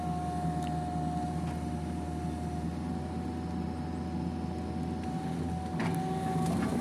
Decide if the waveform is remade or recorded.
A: recorded